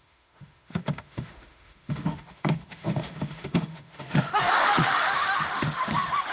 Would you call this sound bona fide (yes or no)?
no